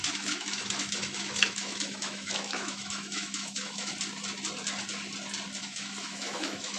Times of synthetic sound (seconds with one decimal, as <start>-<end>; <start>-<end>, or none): 0.0-3.9; 5.6-6.8